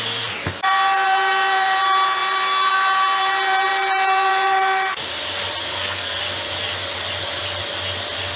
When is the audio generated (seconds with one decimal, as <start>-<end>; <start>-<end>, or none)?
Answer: 5.7-6.2